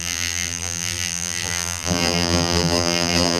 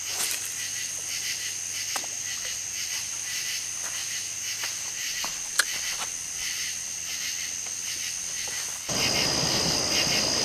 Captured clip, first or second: second